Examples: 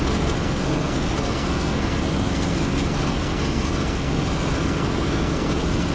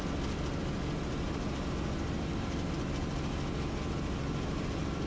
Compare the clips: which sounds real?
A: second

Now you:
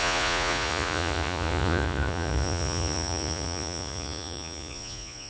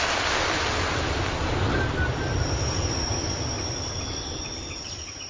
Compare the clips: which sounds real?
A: second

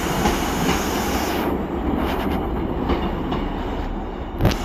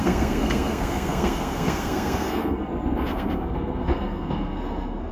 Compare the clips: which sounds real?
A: first